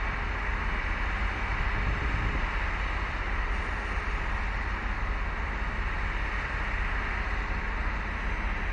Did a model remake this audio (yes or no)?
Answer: no